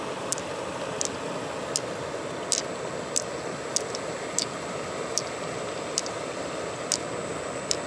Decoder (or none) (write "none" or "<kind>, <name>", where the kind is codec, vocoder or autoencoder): none